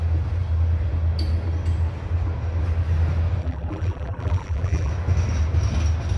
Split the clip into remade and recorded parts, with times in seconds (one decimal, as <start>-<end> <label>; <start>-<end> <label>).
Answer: 0.0-3.4 recorded; 3.4-4.9 remade; 4.9-6.2 recorded